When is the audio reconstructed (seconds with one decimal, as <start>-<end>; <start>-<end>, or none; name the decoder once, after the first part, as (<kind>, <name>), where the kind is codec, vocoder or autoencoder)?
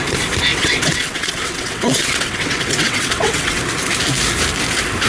0.5-3.6 (vocoder, WaveNeXt)